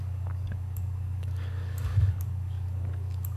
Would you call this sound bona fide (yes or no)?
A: no